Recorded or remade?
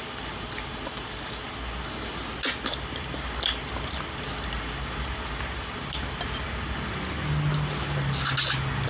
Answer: recorded